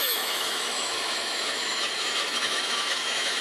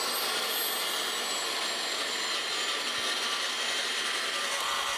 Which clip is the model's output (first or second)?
first